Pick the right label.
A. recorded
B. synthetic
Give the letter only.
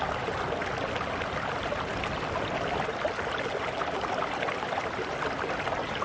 A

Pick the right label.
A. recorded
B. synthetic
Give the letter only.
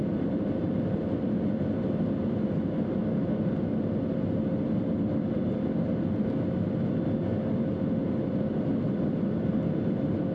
A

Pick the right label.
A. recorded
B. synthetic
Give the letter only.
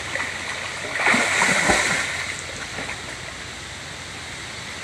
A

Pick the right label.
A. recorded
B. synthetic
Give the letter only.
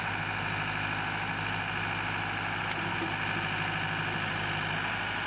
A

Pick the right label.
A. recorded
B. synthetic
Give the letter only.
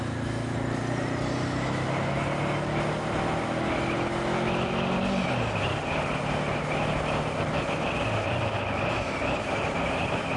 A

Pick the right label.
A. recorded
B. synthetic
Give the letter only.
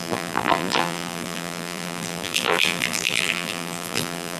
B